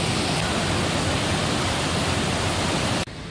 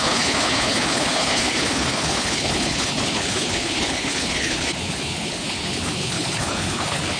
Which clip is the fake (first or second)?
second